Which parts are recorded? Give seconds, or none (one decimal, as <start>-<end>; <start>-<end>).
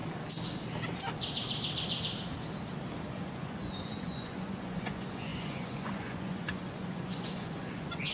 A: 0.0-3.1